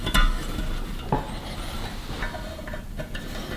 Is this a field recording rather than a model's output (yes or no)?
yes